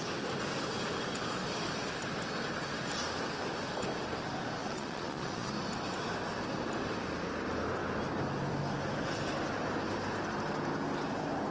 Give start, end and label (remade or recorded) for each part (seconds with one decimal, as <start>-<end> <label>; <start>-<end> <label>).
0.0-4.6 recorded; 4.6-5.5 remade; 5.5-11.5 recorded